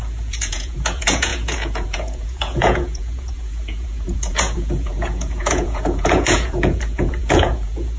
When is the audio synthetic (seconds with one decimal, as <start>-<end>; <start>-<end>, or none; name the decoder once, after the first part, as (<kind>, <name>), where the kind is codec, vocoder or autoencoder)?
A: 0.0-8.0 (vocoder, Vocos)